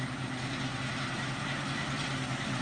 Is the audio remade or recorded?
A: recorded